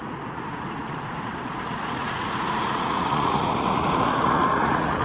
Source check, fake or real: fake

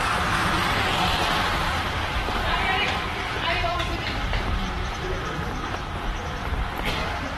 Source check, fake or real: fake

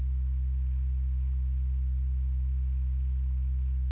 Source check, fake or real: real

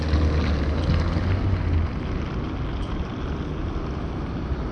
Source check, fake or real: real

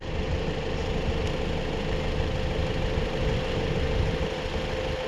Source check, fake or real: real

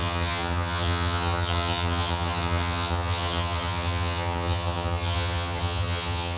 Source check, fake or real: fake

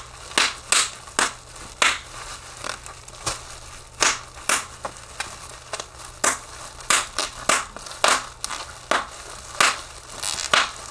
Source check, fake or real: real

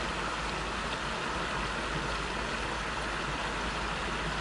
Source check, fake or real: real